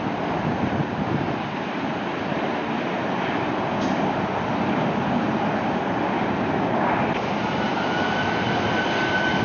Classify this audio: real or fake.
real